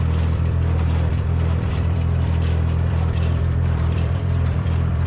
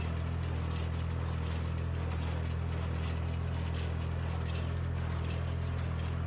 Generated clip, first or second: first